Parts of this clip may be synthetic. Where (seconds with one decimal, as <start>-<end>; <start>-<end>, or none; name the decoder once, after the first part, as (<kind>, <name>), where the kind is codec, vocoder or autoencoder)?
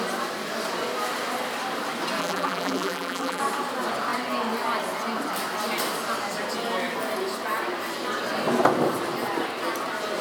2.2-3.4 (vocoder, BigVGAN v2)